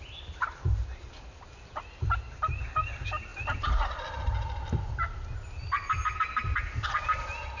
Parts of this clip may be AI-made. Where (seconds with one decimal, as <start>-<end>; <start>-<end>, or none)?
none